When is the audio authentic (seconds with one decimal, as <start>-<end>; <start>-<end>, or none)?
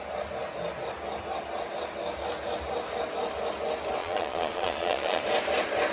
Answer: 0.0-4.0; 5.2-5.9